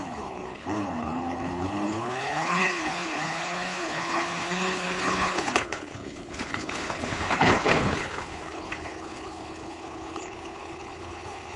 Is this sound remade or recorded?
remade